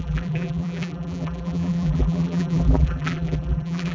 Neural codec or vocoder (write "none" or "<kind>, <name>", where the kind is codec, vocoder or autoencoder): vocoder, BigVGAN v2